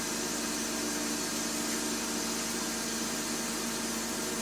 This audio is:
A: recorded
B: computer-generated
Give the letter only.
A